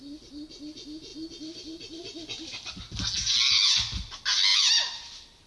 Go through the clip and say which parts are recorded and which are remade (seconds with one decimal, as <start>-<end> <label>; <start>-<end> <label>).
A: 0.0-5.5 recorded